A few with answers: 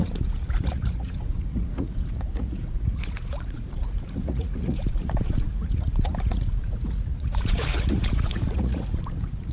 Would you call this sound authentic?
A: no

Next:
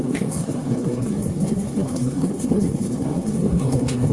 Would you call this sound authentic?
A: no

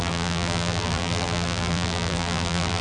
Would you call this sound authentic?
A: no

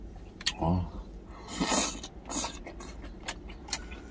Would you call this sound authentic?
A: yes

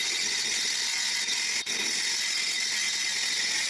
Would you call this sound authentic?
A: yes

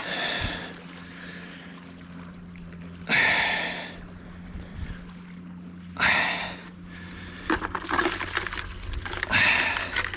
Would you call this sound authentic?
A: yes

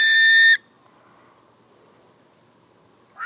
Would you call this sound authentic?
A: yes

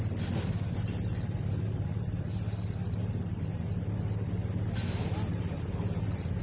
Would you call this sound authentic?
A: yes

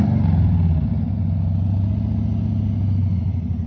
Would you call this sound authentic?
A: yes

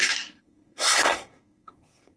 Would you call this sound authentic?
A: no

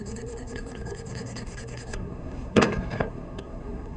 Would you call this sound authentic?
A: no